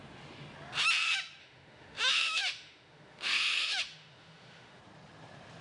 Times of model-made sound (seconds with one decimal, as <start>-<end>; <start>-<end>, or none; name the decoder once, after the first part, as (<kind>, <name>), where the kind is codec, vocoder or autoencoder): 1.4-4.8 (autoencoder, DAC-VAE)